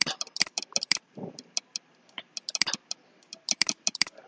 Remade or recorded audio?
remade